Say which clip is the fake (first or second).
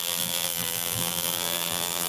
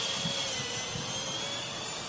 first